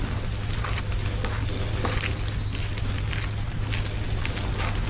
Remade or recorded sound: recorded